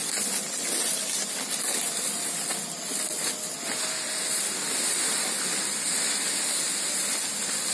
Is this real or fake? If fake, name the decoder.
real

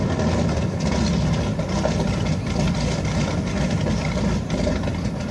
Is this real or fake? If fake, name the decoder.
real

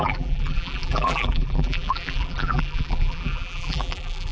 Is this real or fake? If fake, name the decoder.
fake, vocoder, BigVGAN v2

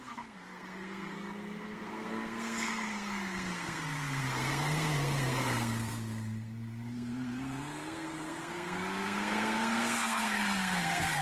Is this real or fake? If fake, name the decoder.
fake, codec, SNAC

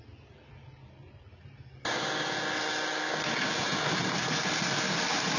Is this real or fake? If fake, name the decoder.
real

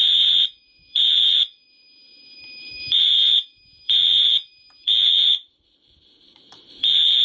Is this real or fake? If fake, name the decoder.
fake, vocoder, BigVGAN v2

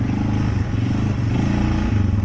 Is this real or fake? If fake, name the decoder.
real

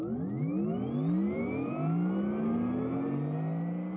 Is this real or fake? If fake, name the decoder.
real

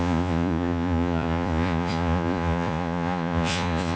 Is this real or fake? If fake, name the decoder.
fake, vocoder, Vocos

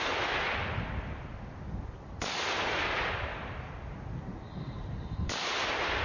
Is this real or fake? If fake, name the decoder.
real